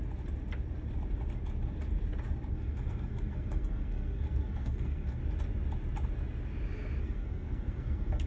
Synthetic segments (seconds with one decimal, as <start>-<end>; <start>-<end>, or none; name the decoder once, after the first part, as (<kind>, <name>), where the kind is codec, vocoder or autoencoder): 2.5-5.2 (codec, SNAC); 7.0-8.3